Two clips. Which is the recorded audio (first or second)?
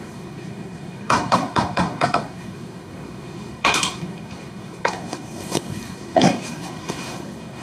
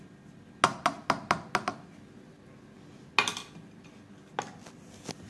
second